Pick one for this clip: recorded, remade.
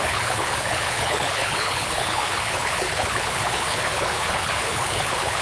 remade